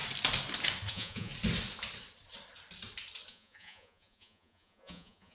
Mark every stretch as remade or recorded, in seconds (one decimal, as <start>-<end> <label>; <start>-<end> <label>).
0.0-0.9 recorded; 0.9-1.3 remade; 1.3-3.3 recorded; 3.3-5.3 remade